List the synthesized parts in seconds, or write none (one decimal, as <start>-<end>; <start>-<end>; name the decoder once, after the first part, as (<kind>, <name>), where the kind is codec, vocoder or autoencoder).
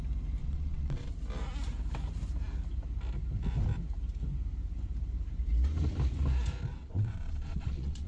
0.4-1.1 (vocoder, WaveNeXt); 6.8-8.1